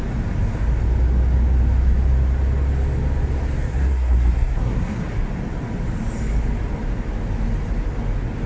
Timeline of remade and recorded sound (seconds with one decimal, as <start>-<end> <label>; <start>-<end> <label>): 0.0-3.7 recorded; 3.7-5.0 remade; 5.0-8.5 recorded